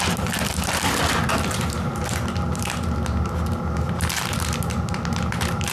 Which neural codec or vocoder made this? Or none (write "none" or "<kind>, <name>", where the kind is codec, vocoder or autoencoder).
none